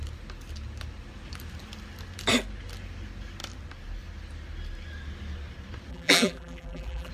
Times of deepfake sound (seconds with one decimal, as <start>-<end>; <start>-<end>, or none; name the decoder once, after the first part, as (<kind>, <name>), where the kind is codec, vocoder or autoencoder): 5.9-7.1 (vocoder, BigVGAN v2)